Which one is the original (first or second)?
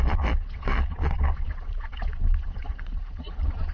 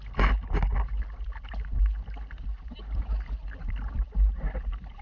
second